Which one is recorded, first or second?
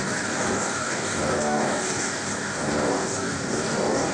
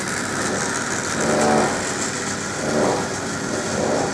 second